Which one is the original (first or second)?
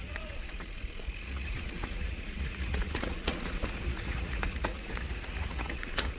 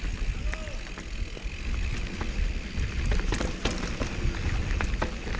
second